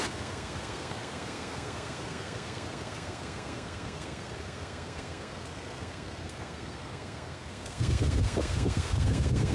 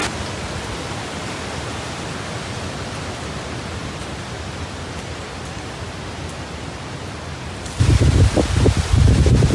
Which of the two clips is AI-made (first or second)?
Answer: first